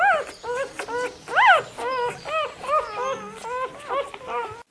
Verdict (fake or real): real